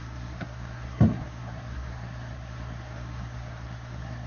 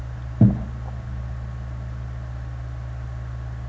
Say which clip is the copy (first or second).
first